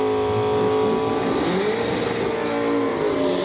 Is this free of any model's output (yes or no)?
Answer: yes